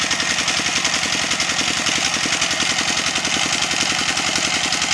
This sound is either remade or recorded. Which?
recorded